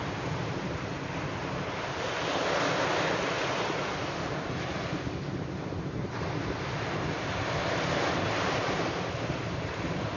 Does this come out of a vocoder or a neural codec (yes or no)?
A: no